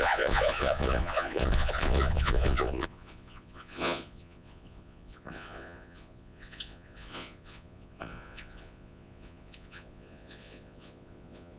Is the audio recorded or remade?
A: remade